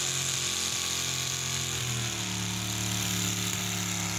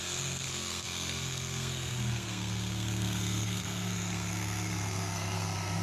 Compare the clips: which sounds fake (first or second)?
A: second